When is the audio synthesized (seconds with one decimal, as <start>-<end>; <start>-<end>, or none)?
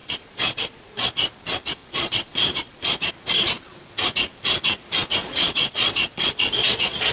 0.0-1.3; 1.8-3.1; 5.2-7.1